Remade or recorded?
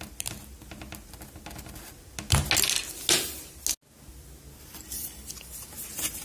recorded